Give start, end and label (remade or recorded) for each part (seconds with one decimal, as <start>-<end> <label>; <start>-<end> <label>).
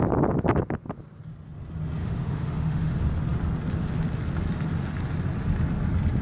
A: 0.0-2.0 recorded; 2.0-2.9 remade; 2.9-6.2 recorded